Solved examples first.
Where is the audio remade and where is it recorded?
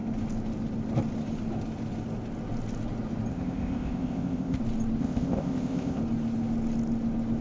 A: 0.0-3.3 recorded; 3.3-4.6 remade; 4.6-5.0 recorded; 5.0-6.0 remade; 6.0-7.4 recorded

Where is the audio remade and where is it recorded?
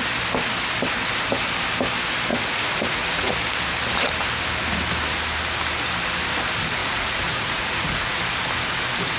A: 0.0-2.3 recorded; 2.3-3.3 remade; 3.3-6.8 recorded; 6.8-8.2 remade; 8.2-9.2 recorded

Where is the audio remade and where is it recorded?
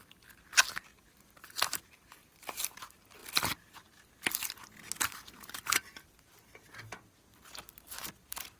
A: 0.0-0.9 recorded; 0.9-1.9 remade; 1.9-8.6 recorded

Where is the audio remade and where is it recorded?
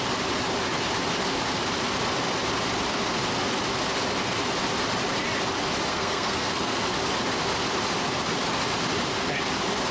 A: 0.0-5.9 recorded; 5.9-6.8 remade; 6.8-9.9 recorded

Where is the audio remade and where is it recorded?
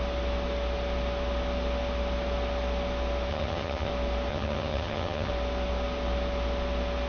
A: 0.0-3.3 recorded; 3.3-3.9 remade; 3.9-4.3 recorded; 4.3-5.3 remade; 5.3-7.1 recorded